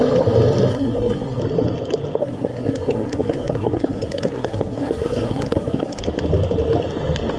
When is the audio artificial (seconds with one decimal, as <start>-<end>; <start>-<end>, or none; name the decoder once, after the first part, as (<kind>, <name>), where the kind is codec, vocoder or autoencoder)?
0.7-1.4 (codec, SNAC); 2.2-6.0